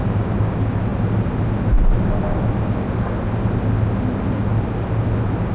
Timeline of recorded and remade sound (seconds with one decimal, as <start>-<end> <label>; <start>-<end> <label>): 0.0-5.5 recorded